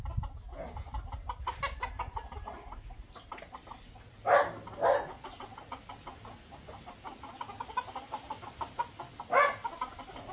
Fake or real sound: real